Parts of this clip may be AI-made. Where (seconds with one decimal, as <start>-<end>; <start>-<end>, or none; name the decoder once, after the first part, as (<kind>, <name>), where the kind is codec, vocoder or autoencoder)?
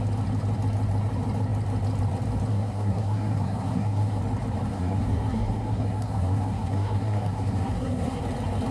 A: 2.5-4.2 (codec, SNAC); 4.7-8.2